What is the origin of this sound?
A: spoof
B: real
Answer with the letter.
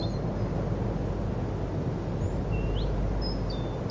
B